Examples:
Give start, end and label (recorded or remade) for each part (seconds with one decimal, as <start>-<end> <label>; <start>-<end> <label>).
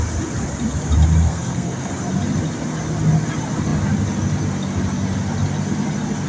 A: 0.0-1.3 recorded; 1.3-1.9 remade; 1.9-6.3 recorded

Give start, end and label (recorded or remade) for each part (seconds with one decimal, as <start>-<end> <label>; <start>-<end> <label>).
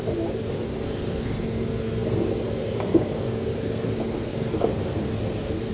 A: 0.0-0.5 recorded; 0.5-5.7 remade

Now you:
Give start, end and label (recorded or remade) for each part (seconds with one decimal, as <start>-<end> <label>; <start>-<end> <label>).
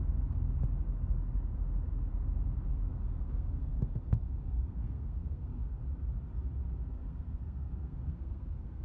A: 0.0-2.7 recorded; 2.7-5.8 remade; 5.8-6.9 recorded; 6.9-8.8 remade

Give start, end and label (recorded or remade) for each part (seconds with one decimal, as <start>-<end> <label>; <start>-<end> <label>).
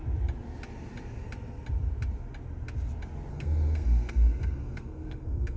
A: 0.0-3.3 recorded; 3.3-5.6 remade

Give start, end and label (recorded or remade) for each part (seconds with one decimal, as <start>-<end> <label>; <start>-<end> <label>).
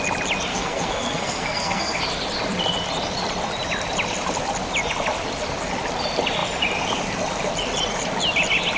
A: 0.0-0.5 recorded; 0.5-2.0 remade; 2.0-8.8 recorded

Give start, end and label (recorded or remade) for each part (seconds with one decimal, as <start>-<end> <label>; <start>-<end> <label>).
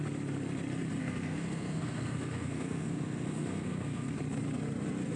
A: 0.0-1.0 recorded; 1.0-4.1 remade; 4.1-5.2 recorded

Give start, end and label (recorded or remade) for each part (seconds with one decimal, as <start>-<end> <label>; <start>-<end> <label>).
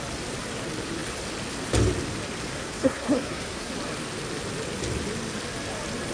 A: 0.0-2.6 recorded; 2.6-3.7 remade; 3.7-6.1 recorded